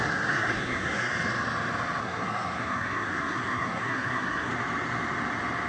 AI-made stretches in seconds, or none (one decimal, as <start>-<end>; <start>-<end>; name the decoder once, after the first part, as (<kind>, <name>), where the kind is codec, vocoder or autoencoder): 0.0-1.1 (codec, SNAC); 2.0-4.5